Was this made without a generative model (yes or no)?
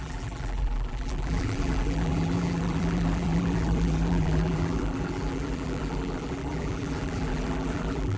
no